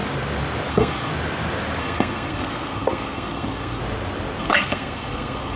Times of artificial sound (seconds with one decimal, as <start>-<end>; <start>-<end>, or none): 0.7-1.1; 1.8-3.8; 4.4-5.6